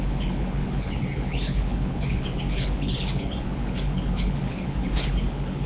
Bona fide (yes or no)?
no